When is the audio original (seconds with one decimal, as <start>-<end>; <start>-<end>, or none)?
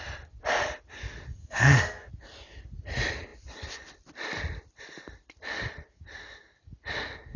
0.0-1.4; 2.1-7.4